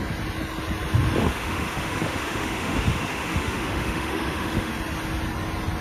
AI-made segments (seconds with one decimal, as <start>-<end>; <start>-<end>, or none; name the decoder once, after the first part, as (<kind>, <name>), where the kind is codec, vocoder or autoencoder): 1.2-4.7 (autoencoder, DAC-VAE)